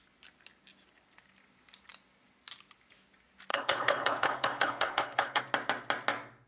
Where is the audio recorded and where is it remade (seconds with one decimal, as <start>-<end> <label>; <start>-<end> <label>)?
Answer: 0.0-3.5 recorded; 3.5-5.4 remade; 5.4-6.5 recorded